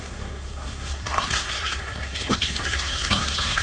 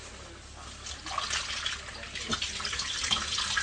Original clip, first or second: second